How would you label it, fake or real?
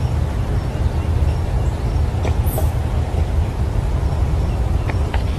real